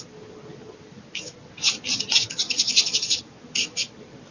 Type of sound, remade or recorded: recorded